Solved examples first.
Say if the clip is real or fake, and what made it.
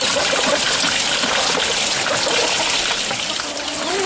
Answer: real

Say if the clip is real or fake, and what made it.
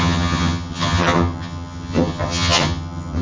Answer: fake, vocoder, HiFi-GAN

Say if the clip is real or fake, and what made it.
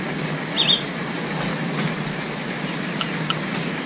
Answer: real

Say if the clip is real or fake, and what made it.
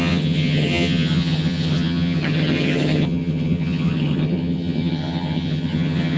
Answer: fake, vocoder, HiFi-GAN